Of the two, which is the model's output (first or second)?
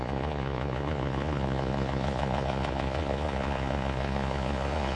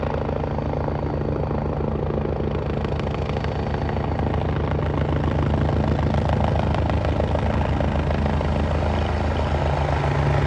first